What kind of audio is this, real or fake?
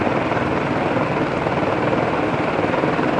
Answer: real